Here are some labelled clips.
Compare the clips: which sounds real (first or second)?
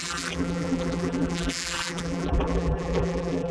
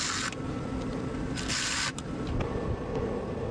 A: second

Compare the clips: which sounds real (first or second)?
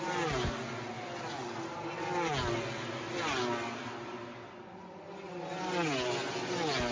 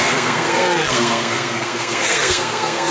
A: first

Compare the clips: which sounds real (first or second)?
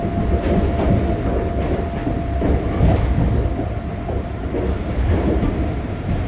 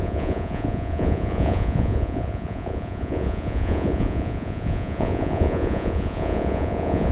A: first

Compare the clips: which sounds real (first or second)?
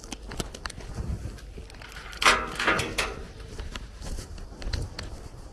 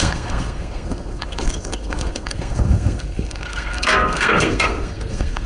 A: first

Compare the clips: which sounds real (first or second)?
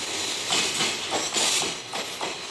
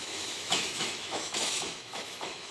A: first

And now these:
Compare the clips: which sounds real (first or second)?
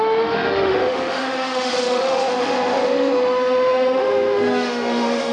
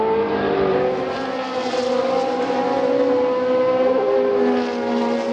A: second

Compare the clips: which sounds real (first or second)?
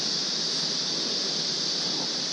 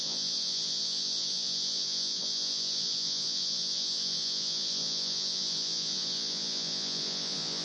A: first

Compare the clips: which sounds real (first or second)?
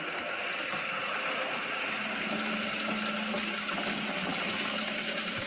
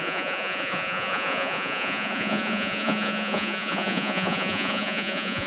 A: first